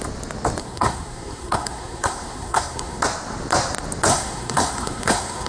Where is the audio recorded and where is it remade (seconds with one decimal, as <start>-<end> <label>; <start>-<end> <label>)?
0.0-0.6 recorded; 0.6-3.0 remade; 3.0-4.1 recorded; 4.1-5.5 remade